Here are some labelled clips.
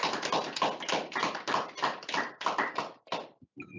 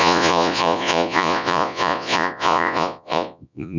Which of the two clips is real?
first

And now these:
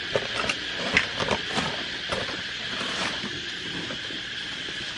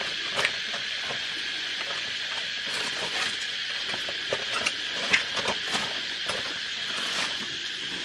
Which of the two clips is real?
first